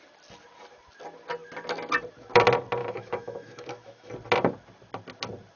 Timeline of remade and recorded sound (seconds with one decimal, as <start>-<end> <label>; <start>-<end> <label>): 0.0-2.8 recorded; 2.8-4.1 remade; 4.1-5.6 recorded